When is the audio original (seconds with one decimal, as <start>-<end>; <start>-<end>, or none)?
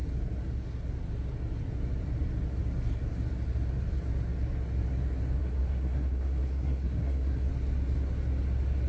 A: 0.0-5.4; 7.5-8.9